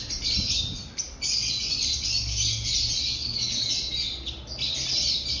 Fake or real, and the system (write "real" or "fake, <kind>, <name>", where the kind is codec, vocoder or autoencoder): real